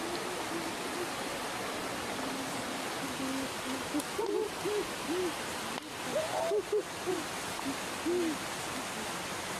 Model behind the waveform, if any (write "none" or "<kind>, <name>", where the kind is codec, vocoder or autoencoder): none